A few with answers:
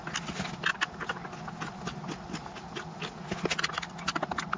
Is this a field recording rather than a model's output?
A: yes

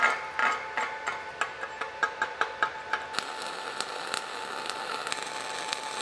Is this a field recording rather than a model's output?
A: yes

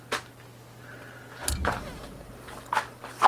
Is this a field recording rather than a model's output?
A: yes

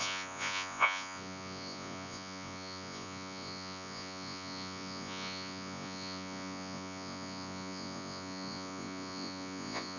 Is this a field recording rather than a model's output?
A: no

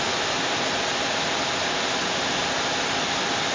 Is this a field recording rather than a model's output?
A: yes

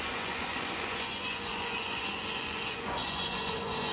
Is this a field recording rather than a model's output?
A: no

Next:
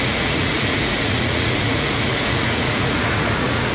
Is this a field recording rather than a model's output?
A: no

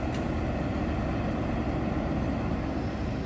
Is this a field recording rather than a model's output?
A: yes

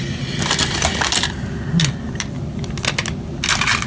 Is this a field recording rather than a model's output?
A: yes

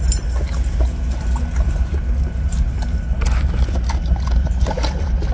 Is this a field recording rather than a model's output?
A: yes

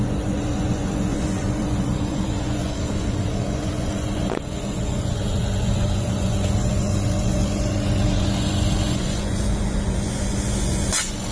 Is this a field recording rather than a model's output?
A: no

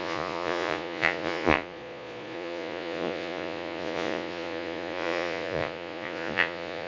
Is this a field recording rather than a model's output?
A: no